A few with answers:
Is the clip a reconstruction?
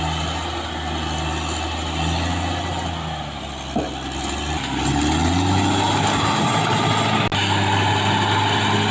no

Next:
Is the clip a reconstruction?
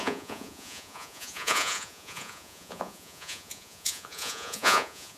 yes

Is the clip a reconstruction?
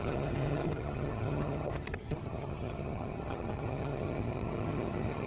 yes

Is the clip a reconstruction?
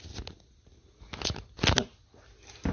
no